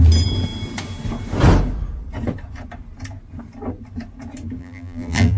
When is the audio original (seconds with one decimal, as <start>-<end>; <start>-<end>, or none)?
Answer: 0.0-4.6